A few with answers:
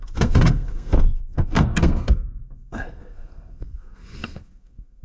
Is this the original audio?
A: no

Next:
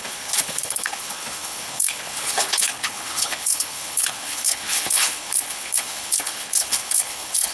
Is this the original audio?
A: no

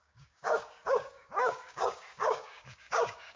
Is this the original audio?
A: no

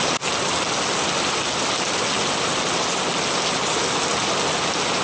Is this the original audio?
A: yes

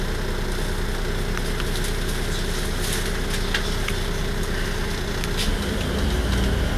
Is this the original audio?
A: yes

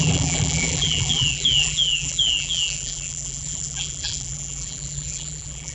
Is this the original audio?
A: no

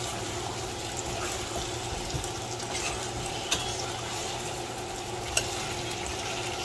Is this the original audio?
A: yes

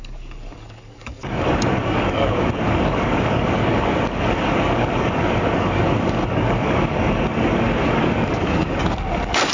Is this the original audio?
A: no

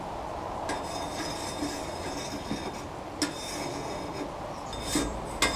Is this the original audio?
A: yes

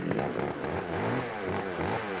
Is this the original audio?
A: no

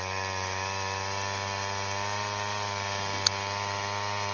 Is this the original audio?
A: yes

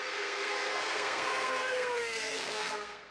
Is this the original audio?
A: no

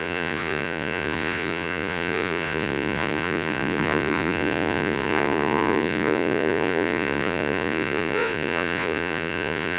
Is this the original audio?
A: no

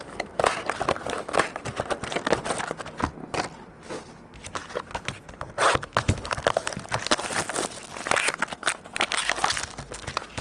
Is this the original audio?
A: yes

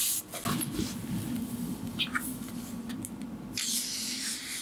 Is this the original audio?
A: yes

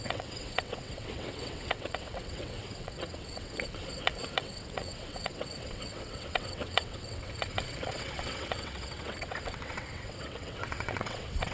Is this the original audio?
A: no